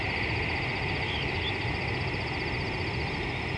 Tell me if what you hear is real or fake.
real